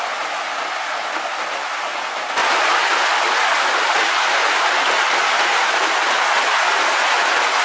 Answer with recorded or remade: recorded